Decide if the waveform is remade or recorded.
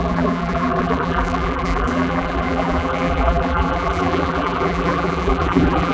remade